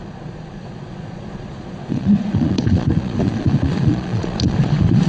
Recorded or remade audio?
remade